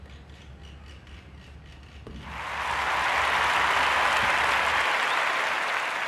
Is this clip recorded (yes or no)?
yes